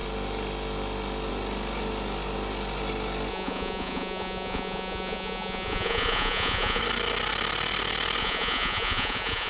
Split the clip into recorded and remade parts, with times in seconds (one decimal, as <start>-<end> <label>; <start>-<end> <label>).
0.0-3.3 recorded; 3.3-6.8 remade; 6.8-8.2 recorded; 8.2-9.5 remade